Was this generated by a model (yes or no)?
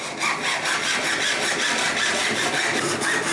yes